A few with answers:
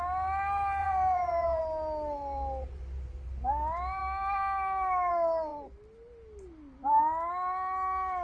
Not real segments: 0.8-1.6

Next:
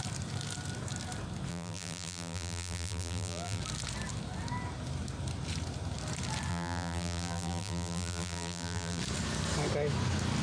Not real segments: 1.5-3.6; 6.5-9.0